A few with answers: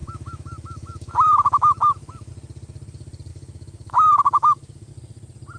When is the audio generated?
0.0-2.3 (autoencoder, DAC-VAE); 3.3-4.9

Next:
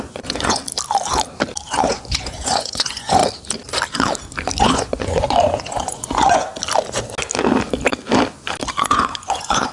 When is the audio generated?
0.0-0.6 (vocoder, Vocos); 1.7-3.2; 4.6-6.5; 8.7-9.7

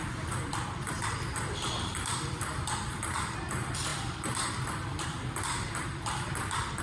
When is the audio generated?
0.0-6.8 (vocoder, BigVGAN v2)

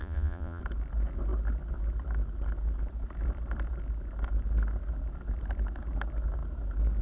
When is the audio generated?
0.0-0.6 (vocoder, Vocos)

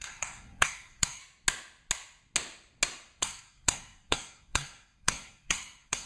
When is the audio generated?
0.0-1.2 (codec, SNAC); 3.2-6.1

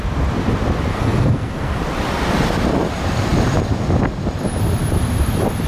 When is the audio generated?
0.9-1.8 (codec, SNAC)